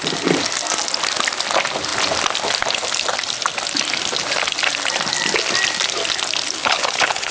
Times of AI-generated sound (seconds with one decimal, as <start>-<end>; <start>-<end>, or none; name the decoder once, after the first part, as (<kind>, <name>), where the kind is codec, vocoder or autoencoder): 6.6-7.3 (codec, HILCodec)